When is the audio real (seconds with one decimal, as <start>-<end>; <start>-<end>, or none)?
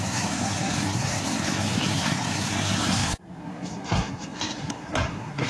none